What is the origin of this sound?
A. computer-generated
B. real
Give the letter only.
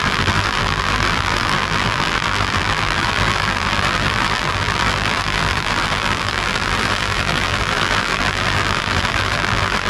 A